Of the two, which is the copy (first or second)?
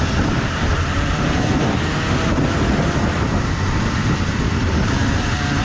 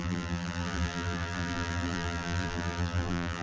second